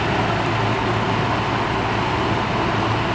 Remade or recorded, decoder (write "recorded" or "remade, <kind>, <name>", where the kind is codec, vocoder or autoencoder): recorded